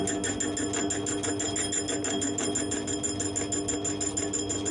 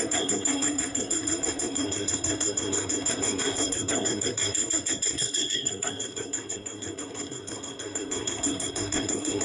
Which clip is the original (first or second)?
first